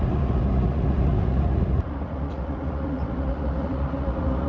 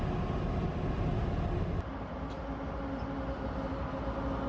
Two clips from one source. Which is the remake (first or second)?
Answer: first